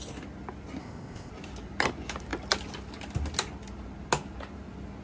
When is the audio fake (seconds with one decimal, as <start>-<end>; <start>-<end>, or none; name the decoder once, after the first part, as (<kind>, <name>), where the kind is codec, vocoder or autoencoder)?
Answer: 0.8-1.3 (codec, ZipCodec)